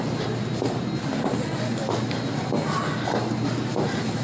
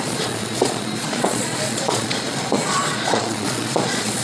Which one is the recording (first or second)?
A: first